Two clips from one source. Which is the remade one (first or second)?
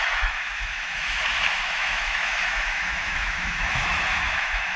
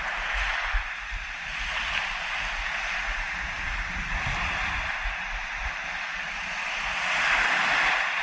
first